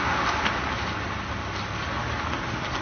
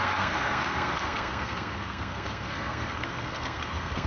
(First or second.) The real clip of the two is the first